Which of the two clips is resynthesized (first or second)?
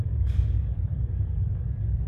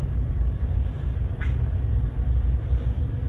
first